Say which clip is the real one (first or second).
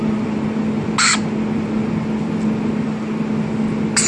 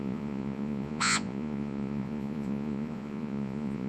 first